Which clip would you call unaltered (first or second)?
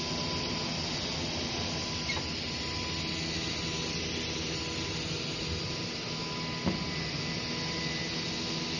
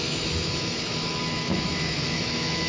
first